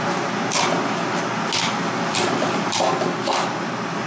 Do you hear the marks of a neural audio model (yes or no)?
no